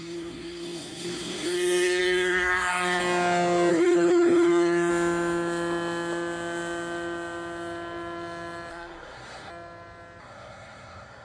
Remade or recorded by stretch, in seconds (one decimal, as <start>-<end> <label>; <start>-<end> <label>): 0.0-3.0 remade; 3.0-3.7 recorded; 3.7-4.9 remade; 4.9-8.7 recorded; 8.7-9.5 remade; 9.5-10.2 recorded; 10.2-11.2 remade